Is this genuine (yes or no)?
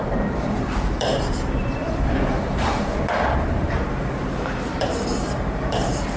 no